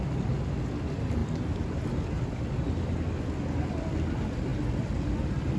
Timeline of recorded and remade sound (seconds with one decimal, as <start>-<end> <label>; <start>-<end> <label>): 0.0-5.6 recorded